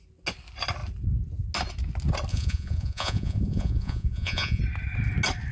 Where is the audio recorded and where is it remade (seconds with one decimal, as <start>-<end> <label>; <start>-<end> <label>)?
0.0-2.3 recorded; 2.3-4.6 remade; 4.6-5.5 recorded